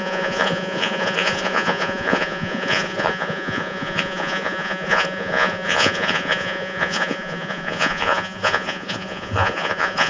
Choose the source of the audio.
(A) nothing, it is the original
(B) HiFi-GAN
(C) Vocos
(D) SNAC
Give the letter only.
C